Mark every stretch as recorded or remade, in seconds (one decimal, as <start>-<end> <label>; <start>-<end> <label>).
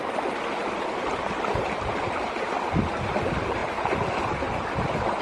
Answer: 0.0-5.2 recorded